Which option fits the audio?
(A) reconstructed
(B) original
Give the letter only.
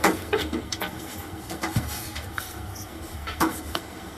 A